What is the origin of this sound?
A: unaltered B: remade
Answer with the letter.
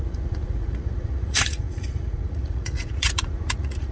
B